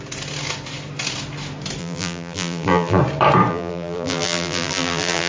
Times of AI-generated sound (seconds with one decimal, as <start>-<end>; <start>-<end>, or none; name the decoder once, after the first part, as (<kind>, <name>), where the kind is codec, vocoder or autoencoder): 1.8-3.0 (vocoder, BigVGAN v2); 3.5-5.3